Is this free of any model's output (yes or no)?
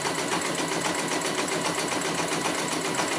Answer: yes